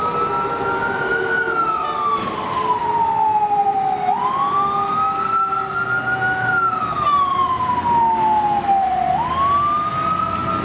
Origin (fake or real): real